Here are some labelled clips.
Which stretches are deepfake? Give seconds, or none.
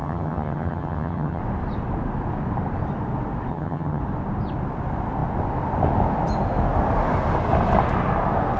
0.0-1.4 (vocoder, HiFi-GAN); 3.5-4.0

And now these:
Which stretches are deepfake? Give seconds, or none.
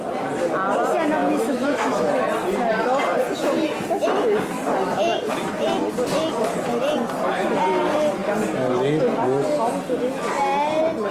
1.2-2.2 (autoencoder, DAC-VAE)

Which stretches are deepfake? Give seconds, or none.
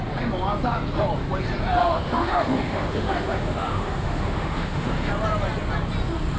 1.8-5.1 (autoencoder, DAC-VAE)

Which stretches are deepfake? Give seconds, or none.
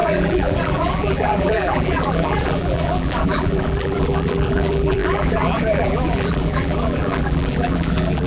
0.0-8.3 (vocoder, BigVGAN v2)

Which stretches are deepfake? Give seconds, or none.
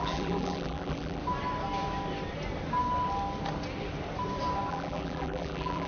0.0-1.2 (vocoder, BigVGAN v2); 4.7-5.9